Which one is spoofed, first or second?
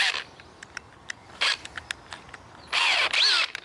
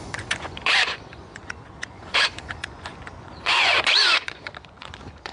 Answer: second